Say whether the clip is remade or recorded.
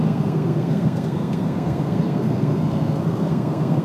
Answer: remade